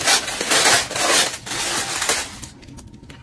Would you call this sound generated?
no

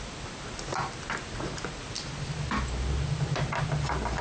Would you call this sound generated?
no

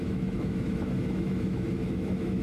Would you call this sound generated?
yes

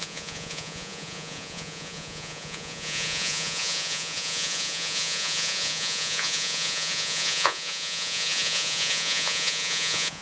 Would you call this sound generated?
yes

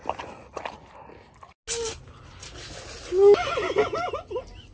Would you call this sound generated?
no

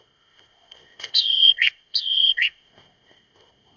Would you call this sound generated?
yes